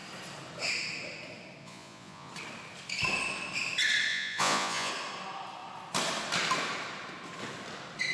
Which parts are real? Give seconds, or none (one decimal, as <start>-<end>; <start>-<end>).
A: 0.0-1.6; 2.3-4.1; 4.9-8.1